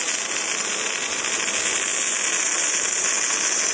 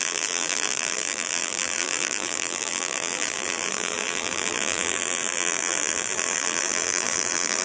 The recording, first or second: first